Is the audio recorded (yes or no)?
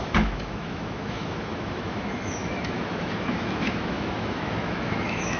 no